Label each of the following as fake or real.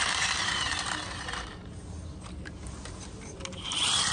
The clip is fake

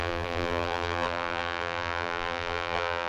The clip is fake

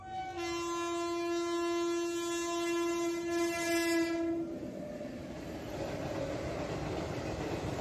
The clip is real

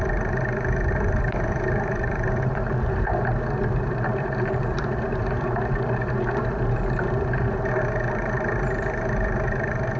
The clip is fake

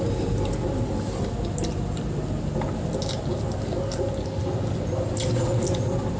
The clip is real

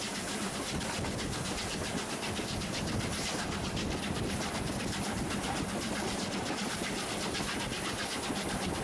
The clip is real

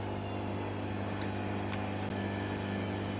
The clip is real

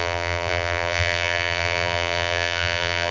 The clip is fake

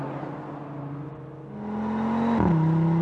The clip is real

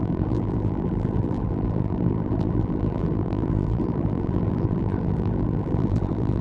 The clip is fake